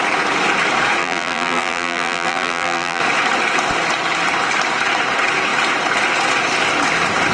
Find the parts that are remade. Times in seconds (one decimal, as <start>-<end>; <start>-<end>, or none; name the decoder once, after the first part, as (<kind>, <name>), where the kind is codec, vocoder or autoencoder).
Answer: 1.0-3.0 (vocoder, BigVGAN v2)